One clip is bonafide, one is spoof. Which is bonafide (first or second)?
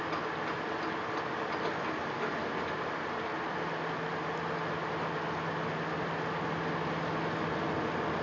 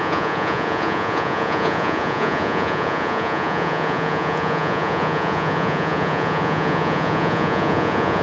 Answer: first